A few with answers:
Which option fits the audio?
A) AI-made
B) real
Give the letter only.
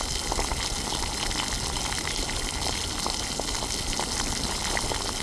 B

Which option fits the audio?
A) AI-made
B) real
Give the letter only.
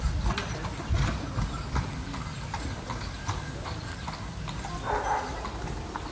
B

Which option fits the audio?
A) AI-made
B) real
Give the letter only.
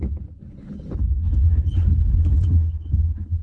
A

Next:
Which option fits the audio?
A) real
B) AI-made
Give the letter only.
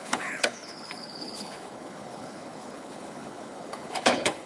B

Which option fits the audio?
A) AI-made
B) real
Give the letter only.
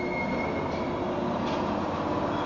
B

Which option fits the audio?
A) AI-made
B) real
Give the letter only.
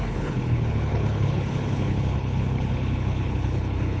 A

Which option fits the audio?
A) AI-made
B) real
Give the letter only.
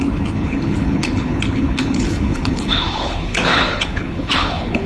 A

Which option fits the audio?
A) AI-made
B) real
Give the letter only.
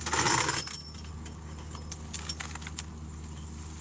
B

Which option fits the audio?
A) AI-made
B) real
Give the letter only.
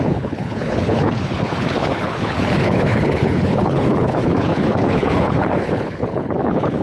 A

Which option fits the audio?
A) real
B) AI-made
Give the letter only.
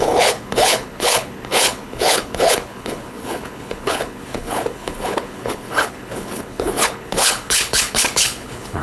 B